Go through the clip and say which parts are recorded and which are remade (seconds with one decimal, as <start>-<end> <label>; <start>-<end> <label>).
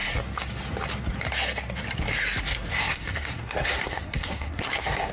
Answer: 0.0-2.4 recorded; 2.4-5.1 remade